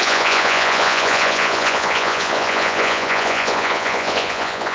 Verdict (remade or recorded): remade